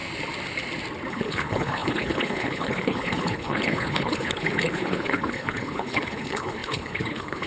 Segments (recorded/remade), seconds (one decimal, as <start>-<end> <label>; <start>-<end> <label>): 0.0-1.1 recorded; 1.1-7.5 remade